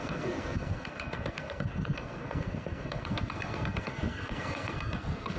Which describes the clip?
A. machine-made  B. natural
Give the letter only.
A